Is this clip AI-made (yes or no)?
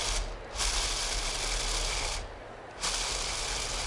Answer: no